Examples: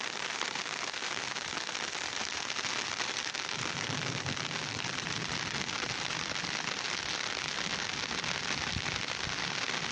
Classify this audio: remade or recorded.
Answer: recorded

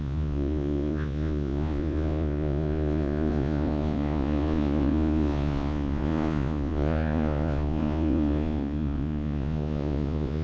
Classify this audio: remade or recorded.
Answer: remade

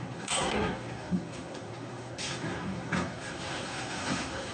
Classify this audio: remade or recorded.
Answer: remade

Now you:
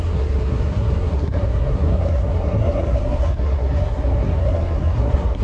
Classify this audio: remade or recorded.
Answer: remade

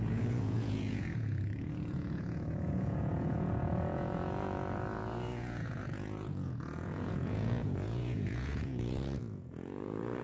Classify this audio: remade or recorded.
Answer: remade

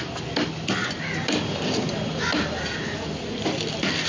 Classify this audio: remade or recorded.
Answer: recorded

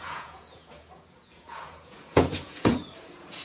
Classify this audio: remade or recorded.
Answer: remade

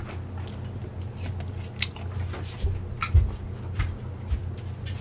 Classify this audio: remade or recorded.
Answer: recorded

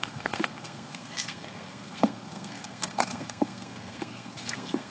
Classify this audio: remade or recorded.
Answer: remade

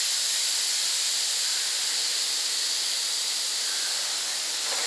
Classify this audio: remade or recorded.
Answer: recorded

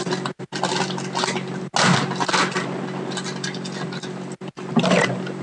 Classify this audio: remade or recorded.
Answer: recorded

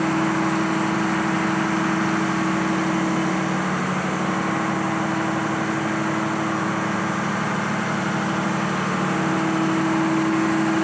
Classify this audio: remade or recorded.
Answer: recorded